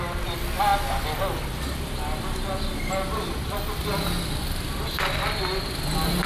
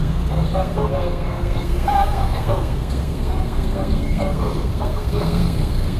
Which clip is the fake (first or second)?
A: second